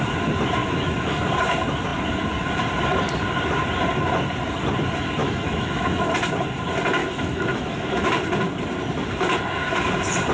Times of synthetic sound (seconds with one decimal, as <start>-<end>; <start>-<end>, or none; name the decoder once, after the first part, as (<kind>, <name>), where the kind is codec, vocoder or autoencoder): 0.6-1.2 (autoencoder, DAC-VAE); 5.2-6.1; 7.0-8.1